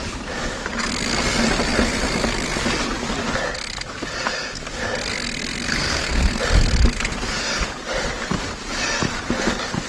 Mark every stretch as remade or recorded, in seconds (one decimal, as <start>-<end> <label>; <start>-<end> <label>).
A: 0.0-5.7 recorded; 5.7-6.4 remade; 6.4-9.9 recorded